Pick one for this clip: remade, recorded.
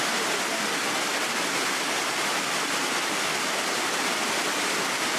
recorded